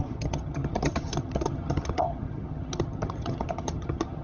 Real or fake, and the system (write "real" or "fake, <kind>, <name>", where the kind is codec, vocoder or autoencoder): fake, vocoder, HiFi-GAN